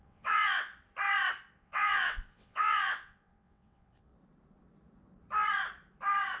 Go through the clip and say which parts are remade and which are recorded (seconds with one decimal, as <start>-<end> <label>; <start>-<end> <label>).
0.0-0.7 remade; 0.7-1.6 recorded; 1.6-4.1 remade; 4.1-6.4 recorded